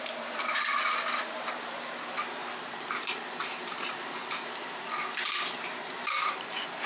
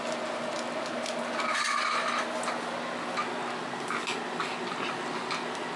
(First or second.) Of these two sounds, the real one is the second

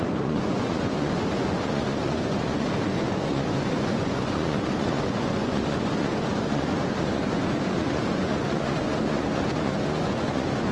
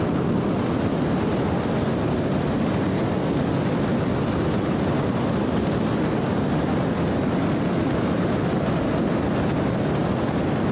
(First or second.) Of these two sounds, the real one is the second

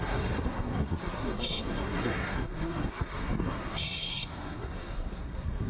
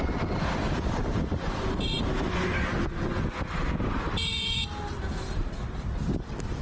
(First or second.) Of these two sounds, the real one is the second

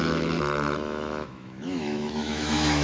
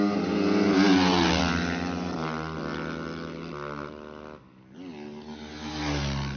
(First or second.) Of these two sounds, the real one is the second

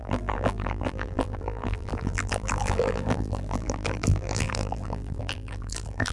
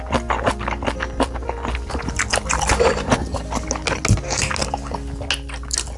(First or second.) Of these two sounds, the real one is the second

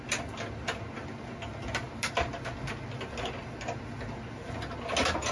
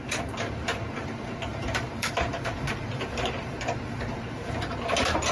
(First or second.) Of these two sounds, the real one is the first